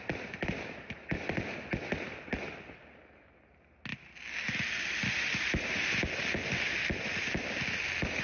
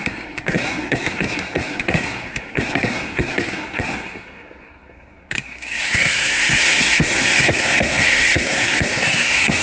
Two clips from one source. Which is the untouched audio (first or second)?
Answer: first